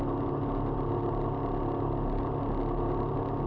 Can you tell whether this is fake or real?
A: real